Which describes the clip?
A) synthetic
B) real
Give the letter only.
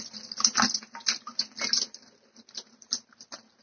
B